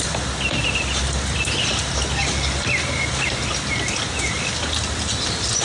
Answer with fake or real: real